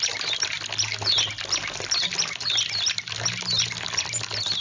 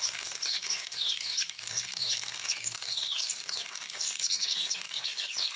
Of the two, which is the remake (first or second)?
second